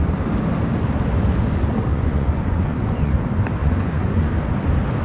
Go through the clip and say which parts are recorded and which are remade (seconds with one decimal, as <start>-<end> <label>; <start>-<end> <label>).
0.0-1.9 recorded; 1.9-3.1 remade; 3.1-3.6 recorded; 3.6-4.3 remade; 4.3-5.0 recorded